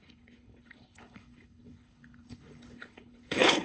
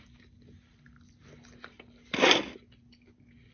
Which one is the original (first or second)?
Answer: second